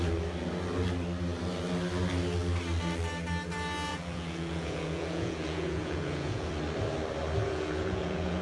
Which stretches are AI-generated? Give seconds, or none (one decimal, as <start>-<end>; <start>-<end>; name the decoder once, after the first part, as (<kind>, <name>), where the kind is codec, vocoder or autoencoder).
3.9-6.5 (vocoder, Vocos); 7.4-8.4